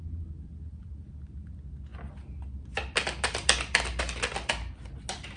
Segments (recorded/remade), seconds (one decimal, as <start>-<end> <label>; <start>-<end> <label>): 0.0-5.4 recorded